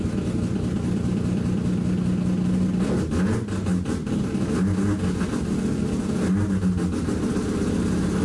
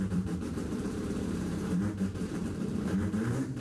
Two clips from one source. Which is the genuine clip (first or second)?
first